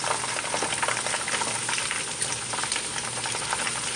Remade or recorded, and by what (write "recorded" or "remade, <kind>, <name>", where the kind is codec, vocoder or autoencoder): recorded